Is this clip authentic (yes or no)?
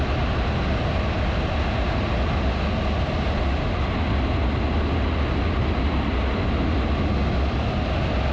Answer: yes